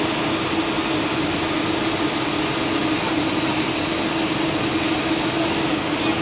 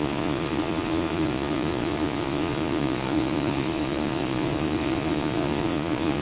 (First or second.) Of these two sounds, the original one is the first